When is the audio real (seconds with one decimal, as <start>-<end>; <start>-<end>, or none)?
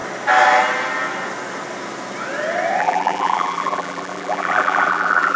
0.0-2.8